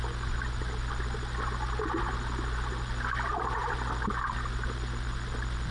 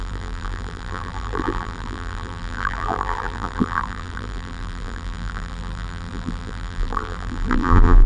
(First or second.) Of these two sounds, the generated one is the second